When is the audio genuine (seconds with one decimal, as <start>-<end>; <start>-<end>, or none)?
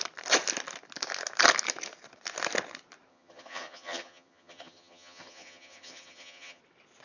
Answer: 0.0-3.1; 6.6-7.0